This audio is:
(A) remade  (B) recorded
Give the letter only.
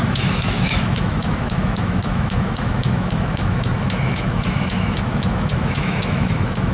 A